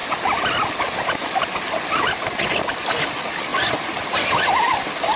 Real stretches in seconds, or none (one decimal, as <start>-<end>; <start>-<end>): 0.0-5.2